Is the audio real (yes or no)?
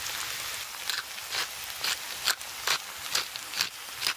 yes